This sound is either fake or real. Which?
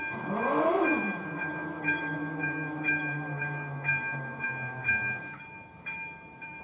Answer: fake